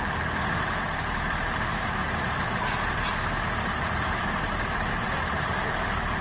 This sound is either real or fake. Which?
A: fake